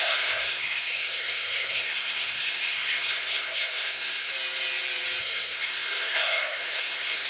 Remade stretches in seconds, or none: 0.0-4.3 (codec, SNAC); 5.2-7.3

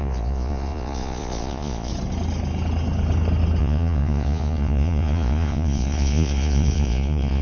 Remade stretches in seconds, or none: 0.0-1.9 (vocoder, Vocos); 3.6-7.4

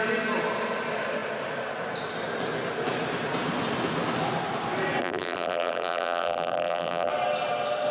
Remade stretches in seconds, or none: 5.0-7.1 (vocoder, BigVGAN v2)

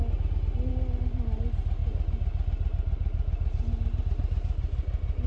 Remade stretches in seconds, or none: none

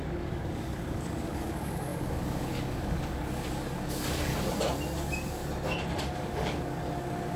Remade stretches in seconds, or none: 0.0-4.3 (codec, DAC); 5.0-5.4; 6.0-7.4

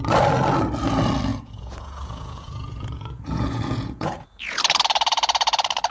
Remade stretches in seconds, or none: 1.3-4.6 (vocoder, Vocos)

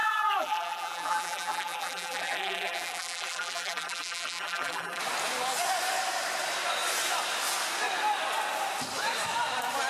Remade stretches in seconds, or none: 0.0-5.0 (vocoder, BigVGAN v2)